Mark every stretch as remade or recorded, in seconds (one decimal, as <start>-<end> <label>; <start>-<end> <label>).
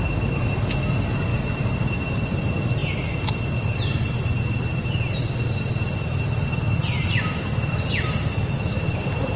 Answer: 0.0-9.4 recorded